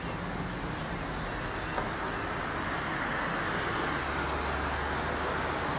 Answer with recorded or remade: recorded